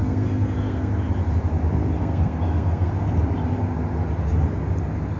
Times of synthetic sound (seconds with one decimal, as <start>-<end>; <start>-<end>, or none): 0.0-0.9; 2.0-2.9